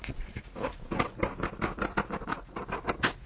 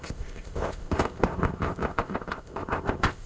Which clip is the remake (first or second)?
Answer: second